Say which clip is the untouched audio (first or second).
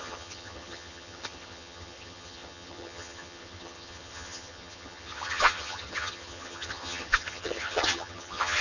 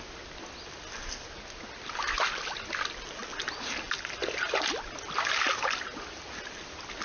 second